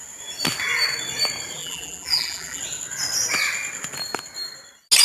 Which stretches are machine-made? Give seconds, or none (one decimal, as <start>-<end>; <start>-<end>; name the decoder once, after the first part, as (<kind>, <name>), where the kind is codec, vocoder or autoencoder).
1.6-2.6 (vocoder, BigVGAN v2)